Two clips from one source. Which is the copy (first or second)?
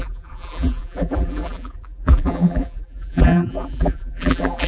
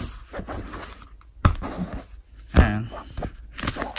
first